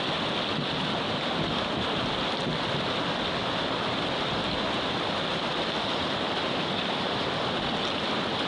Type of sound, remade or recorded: recorded